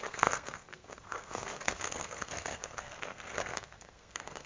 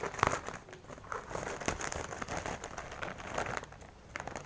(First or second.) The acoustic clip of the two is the second